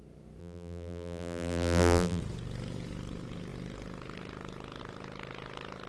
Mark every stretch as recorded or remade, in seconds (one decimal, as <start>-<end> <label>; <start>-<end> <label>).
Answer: 0.0-0.4 recorded; 0.4-2.2 remade; 2.2-5.9 recorded